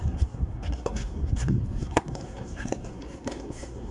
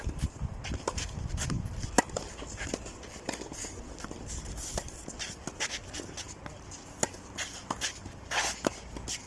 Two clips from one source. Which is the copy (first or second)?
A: first